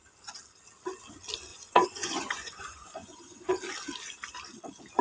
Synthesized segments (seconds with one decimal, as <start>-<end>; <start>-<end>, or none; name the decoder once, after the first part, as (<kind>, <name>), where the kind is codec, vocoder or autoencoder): 1.5-3.5 (vocoder, Vocos)

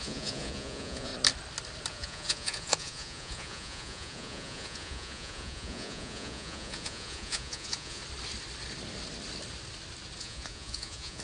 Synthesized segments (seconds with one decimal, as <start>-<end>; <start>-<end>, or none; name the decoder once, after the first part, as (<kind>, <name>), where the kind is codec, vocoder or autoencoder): 0.0-1.1 (vocoder, Vocos); 1.9-8.0; 10.2-11.2

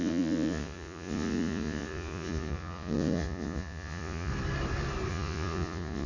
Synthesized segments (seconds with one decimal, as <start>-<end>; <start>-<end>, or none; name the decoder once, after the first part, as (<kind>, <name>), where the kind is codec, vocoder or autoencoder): 0.0-4.3 (vocoder, Vocos); 5.1-6.1